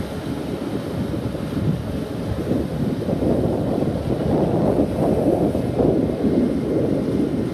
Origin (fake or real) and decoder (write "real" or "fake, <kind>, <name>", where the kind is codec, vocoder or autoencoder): real